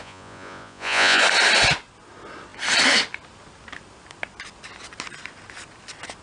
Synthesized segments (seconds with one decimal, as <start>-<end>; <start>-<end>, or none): 0.0-1.2